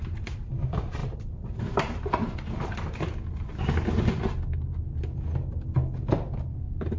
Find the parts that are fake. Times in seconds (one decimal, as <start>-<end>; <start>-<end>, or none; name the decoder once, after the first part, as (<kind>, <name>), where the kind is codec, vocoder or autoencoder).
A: 0.0-0.5 (vocoder, BigVGAN v2)